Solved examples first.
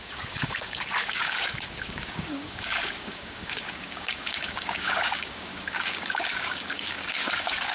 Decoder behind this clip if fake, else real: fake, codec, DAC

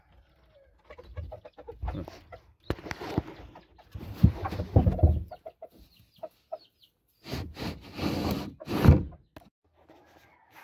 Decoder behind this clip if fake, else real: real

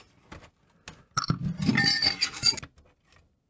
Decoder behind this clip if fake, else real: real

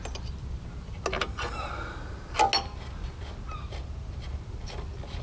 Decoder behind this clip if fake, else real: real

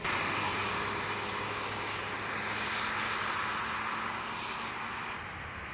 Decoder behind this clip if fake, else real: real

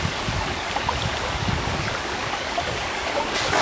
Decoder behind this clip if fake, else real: fake, codec, DAC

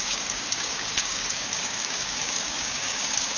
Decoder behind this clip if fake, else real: fake, codec, DAC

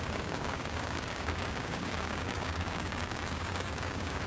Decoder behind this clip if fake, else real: fake, codec, DAC